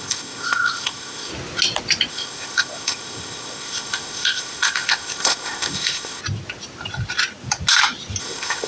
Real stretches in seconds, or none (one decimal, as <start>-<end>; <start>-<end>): 1.3-2.1; 6.2-8.2